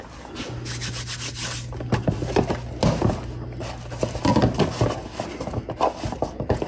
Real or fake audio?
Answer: real